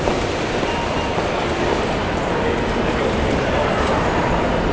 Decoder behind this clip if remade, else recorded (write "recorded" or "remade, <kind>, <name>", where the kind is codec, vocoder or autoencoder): remade, vocoder, BigVGAN v2